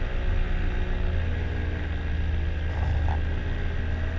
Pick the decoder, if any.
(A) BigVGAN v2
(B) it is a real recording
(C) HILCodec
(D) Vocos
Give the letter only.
B